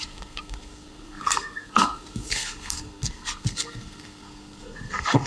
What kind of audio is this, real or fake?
fake